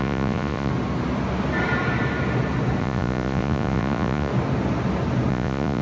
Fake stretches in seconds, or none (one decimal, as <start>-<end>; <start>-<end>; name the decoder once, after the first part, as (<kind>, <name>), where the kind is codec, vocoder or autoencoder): 0.0-0.7 (vocoder, Vocos); 2.8-4.3; 5.3-5.8